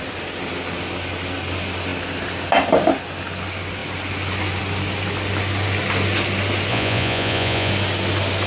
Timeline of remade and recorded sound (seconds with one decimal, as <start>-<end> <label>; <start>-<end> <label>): 0.0-6.7 recorded; 6.7-7.7 remade; 7.7-8.5 recorded